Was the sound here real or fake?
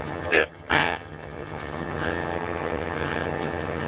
fake